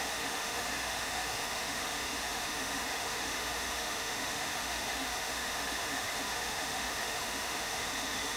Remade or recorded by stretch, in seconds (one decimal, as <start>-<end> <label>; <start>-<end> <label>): 0.0-8.4 remade